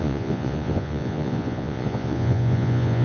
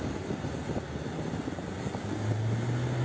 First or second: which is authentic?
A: second